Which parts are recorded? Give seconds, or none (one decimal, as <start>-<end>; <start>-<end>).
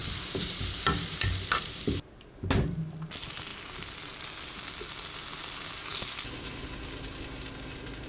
2.3-5.9; 7.5-8.1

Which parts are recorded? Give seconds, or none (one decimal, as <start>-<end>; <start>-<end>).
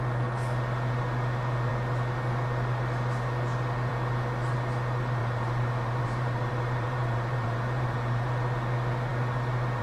0.0-5.2; 8.3-9.8